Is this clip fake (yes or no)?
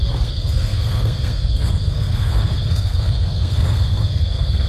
yes